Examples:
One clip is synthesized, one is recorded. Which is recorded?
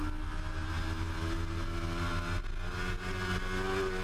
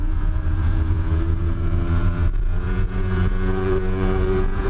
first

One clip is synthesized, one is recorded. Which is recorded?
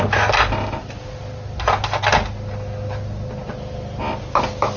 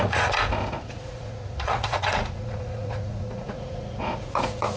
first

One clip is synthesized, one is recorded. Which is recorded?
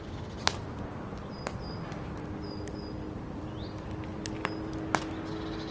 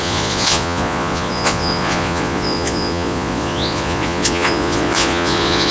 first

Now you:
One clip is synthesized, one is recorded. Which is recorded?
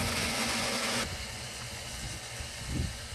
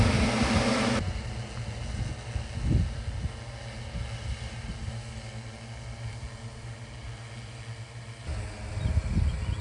second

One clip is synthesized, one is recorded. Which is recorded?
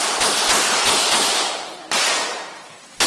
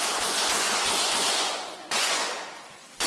first